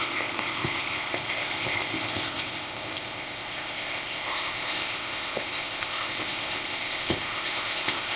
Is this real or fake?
fake